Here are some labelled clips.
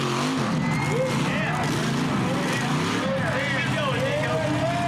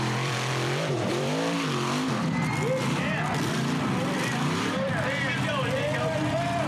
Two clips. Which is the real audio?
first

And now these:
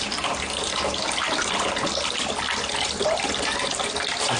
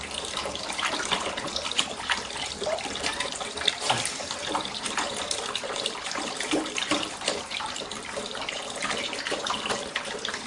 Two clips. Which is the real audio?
first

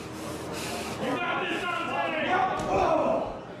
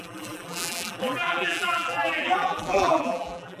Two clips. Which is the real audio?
first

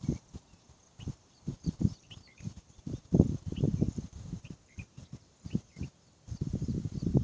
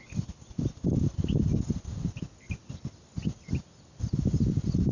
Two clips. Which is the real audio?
second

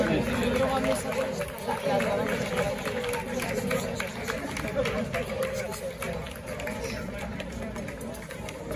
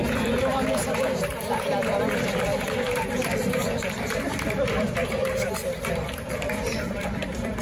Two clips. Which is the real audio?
first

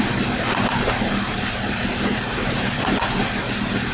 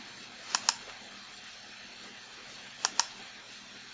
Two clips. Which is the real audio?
second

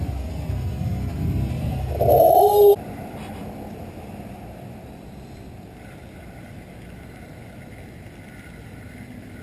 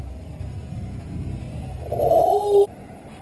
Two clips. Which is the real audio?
first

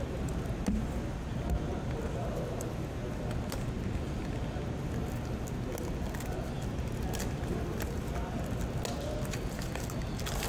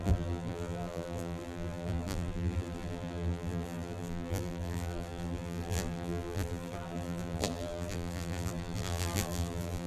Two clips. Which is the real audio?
first